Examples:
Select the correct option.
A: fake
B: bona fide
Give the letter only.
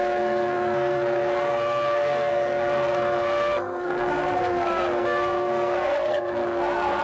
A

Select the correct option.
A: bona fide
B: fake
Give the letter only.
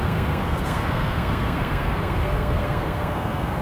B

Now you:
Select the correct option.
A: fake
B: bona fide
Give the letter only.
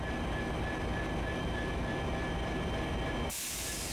B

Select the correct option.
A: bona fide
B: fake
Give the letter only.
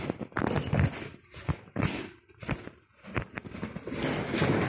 A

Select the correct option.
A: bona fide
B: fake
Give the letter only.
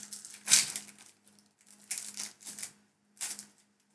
A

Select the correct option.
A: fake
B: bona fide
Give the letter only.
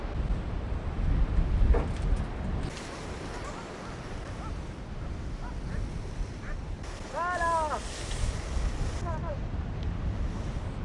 B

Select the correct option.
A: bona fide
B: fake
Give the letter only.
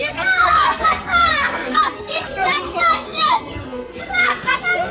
B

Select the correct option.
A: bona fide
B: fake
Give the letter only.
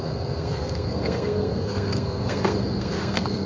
B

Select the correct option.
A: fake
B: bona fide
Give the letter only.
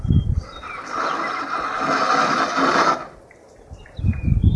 B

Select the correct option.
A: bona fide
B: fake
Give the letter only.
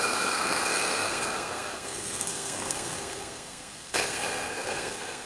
B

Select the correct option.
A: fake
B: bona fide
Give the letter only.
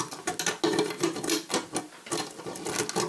B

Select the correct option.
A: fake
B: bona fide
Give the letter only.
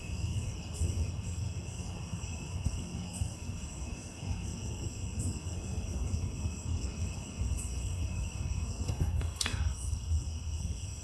A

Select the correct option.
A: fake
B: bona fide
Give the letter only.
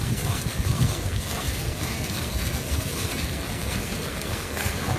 A